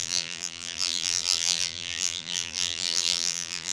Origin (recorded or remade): remade